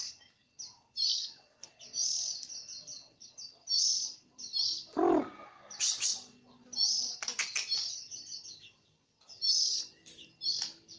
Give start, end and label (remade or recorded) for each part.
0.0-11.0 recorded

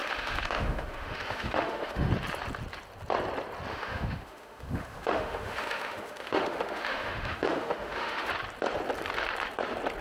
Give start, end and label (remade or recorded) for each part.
0.0-2.1 remade; 2.1-3.7 recorded; 3.7-8.3 remade; 8.3-10.0 recorded

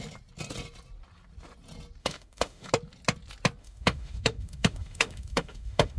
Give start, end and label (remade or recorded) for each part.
0.0-2.0 recorded; 2.0-2.7 remade; 2.7-3.6 recorded; 3.6-6.0 remade

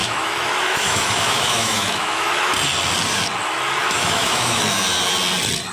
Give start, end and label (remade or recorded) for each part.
0.0-2.5 remade; 2.5-3.8 recorded; 3.8-4.6 remade; 4.6-5.7 recorded

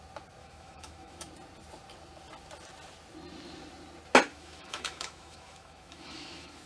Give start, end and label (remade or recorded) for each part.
0.0-0.4 recorded; 0.4-1.3 remade; 1.3-4.3 recorded; 4.3-6.7 remade

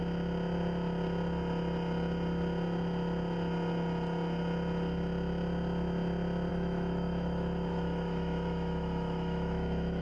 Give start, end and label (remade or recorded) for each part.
0.0-6.5 recorded; 6.5-10.0 remade

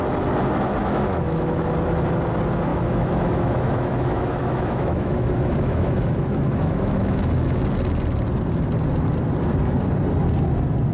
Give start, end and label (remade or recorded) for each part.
0.0-0.8 recorded; 0.8-1.7 remade; 1.7-2.7 recorded; 2.7-7.6 remade; 7.6-10.9 recorded